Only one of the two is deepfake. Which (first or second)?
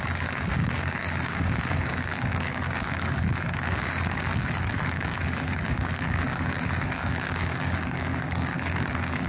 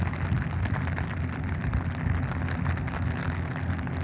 first